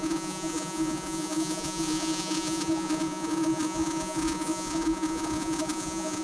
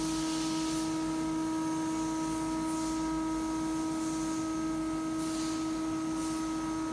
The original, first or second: second